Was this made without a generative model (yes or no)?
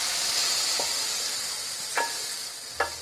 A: yes